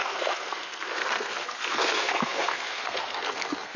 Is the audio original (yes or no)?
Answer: no